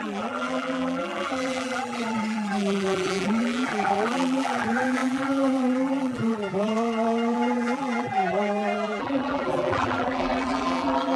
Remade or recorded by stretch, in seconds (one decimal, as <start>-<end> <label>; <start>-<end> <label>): 0.0-11.2 remade